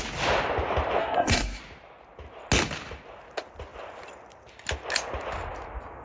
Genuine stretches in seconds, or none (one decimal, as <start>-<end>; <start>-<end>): 0.0-1.0; 1.6-6.0